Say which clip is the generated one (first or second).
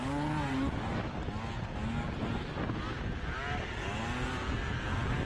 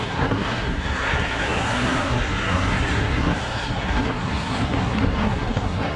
second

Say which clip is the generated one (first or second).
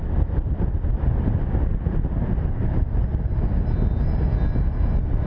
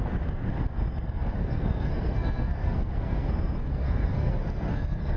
second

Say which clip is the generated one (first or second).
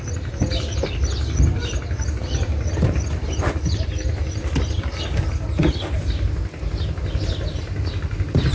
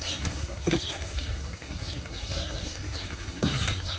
second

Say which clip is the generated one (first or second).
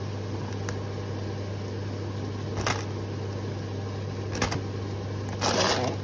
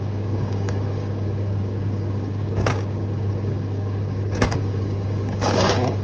second